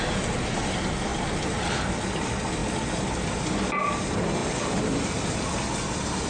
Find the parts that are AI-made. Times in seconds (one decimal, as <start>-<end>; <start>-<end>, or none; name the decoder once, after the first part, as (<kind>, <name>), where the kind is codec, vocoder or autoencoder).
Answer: 1.1-1.7 (vocoder, BigVGAN v2)